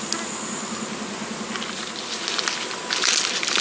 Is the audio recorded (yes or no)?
yes